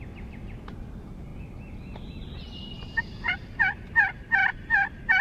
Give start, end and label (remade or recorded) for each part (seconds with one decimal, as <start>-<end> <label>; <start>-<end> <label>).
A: 0.0-5.2 recorded